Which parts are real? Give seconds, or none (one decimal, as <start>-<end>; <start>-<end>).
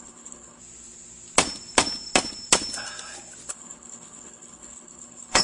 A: 0.6-3.5